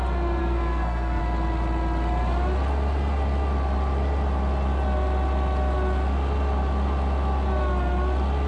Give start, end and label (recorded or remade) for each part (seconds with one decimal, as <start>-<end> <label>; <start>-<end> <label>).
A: 0.0-0.4 recorded; 0.4-1.2 remade; 1.2-8.5 recorded